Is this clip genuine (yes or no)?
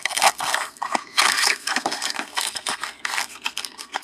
no